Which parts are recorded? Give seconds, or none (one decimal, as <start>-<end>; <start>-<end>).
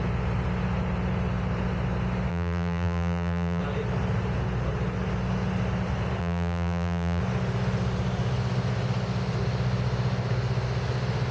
0.0-2.3; 3.6-6.2; 7.2-11.3